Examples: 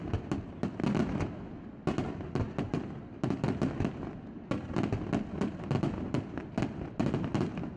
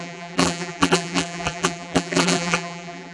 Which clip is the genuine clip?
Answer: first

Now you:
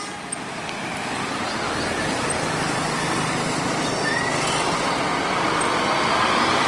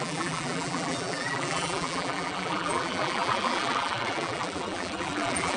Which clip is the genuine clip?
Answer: first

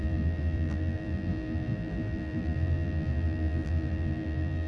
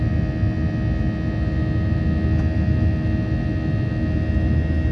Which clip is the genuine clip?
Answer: second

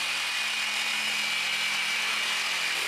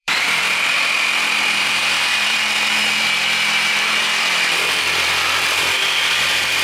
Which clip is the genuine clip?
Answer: first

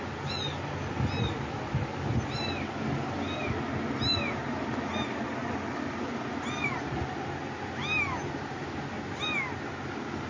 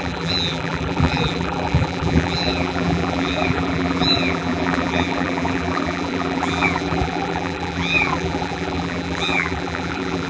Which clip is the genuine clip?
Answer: first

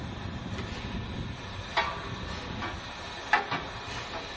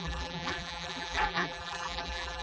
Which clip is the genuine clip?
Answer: first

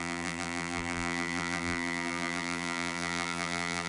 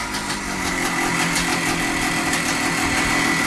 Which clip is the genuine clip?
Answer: second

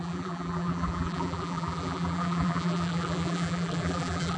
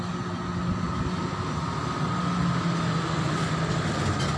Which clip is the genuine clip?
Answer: second